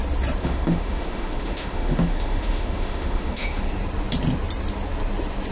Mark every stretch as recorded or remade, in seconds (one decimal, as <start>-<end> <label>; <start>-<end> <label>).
0.0-0.4 recorded; 0.4-3.7 remade; 3.7-5.5 recorded